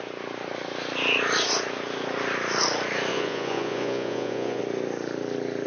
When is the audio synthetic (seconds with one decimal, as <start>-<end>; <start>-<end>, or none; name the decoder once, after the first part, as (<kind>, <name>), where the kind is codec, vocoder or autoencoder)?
3.1-4.6 (vocoder, Vocos)